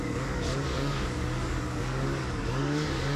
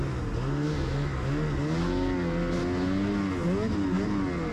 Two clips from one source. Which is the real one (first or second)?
second